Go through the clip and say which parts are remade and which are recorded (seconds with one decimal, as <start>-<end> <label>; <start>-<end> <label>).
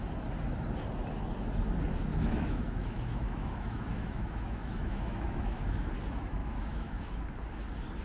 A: 0.0-2.1 recorded; 2.1-5.9 remade; 5.9-6.4 recorded; 6.4-7.2 remade; 7.2-8.0 recorded